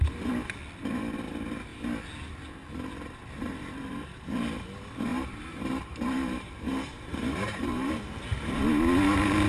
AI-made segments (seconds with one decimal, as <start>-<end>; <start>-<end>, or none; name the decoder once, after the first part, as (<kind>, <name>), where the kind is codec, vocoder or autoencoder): 3.4-4.3 (vocoder, BigVGAN v2); 5.1-7.9